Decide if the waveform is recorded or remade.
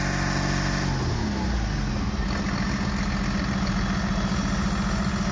recorded